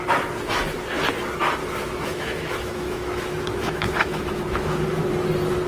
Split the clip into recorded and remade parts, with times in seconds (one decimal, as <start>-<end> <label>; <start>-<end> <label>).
0.0-1.6 recorded; 1.6-5.0 remade; 5.0-5.7 recorded